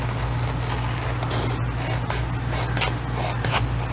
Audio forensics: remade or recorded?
recorded